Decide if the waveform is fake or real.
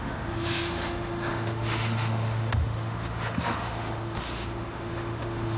fake